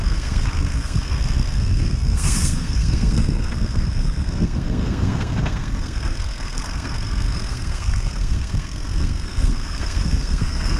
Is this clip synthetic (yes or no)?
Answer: yes